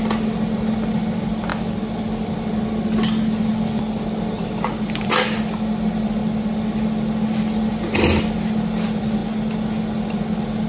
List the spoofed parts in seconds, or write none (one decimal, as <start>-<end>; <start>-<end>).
none

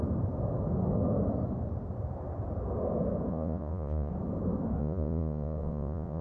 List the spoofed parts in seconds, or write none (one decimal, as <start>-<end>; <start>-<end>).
3.3-4.1; 4.8-6.2

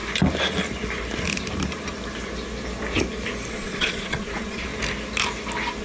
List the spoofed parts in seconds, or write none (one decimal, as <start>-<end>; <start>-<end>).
3.5-4.7